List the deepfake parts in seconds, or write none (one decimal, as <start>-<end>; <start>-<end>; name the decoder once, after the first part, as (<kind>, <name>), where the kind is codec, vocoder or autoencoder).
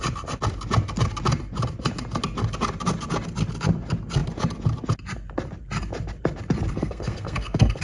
6.7-7.8 (codec, SNAC)